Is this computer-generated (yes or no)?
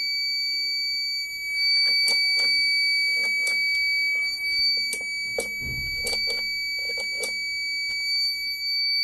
no